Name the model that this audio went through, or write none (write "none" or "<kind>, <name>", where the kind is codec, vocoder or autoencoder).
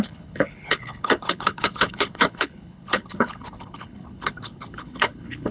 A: codec, HILCodec